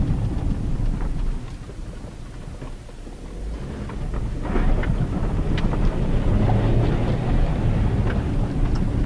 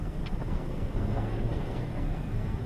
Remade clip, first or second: second